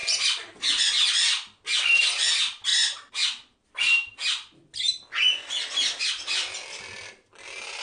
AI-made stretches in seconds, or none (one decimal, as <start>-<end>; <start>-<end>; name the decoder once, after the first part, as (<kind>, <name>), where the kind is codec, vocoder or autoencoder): none